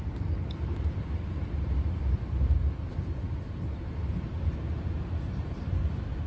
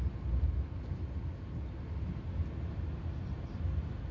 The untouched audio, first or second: second